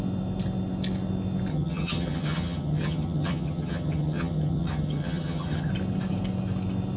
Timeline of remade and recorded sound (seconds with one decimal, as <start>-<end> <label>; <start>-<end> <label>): 0.0-1.5 recorded; 1.5-5.7 remade; 5.7-7.0 recorded